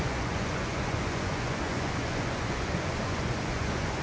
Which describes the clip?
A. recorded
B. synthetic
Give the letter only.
B